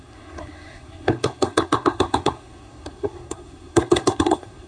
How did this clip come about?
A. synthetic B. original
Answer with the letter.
A